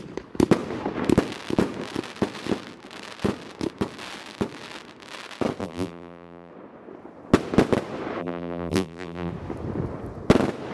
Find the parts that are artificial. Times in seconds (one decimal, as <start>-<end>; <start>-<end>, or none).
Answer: 5.6-6.5; 8.2-9.3